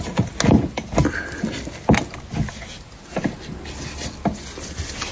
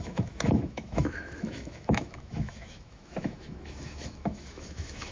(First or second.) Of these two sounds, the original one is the first